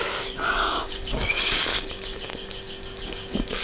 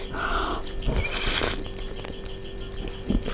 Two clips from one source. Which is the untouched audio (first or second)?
second